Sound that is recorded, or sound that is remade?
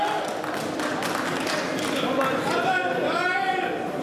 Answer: recorded